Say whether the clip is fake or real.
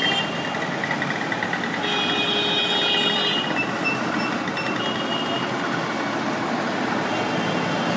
real